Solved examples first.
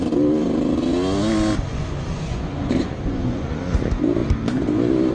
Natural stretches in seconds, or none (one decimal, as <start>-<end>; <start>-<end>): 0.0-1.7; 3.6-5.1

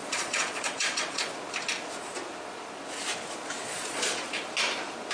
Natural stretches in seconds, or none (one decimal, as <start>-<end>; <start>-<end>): 1.3-3.7; 4.4-5.1

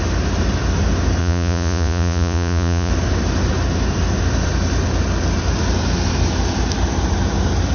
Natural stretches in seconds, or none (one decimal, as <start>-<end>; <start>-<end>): 0.0-1.2; 2.9-7.7

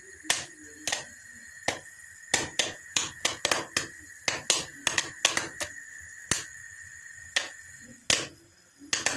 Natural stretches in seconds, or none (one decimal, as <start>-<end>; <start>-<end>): 0.0-2.5; 3.4-9.2